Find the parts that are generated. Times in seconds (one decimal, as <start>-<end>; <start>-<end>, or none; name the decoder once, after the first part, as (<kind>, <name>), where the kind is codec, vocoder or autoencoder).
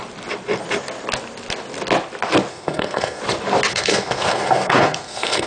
2.5-3.2 (codec, SNAC); 3.7-5.5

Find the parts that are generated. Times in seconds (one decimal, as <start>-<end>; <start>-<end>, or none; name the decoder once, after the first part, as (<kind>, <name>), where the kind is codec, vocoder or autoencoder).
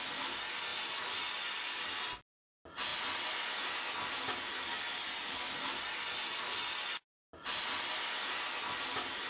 none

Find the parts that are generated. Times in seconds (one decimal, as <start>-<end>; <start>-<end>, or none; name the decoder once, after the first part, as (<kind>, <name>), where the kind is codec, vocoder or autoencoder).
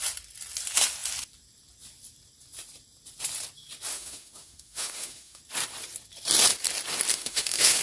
3.9-5.4 (autoencoder, DAC-VAE); 7.1-7.8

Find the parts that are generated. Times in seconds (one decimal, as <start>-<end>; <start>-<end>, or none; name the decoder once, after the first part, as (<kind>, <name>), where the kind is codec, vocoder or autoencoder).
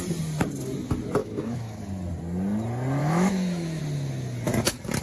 1.2-1.8 (autoencoder, DAC-VAE); 3.0-3.8